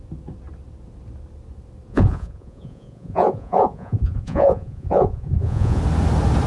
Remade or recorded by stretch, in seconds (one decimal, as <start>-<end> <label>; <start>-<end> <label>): 0.0-1.9 recorded; 1.9-5.8 remade; 5.8-6.5 recorded